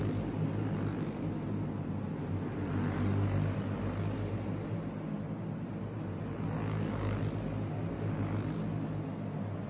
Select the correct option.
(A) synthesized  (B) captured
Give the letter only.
B